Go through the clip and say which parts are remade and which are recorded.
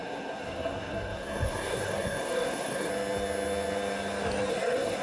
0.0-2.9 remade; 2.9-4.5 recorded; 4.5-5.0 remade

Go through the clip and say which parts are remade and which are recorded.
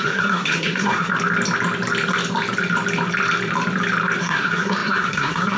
0.0-1.1 remade; 1.1-4.2 recorded; 4.2-5.6 remade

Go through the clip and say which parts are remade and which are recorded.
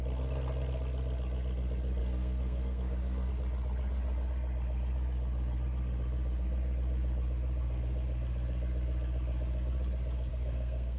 0.0-2.0 recorded; 2.0-3.3 remade; 3.3-10.3 recorded; 10.3-11.0 remade